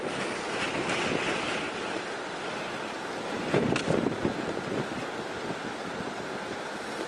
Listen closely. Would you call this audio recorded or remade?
recorded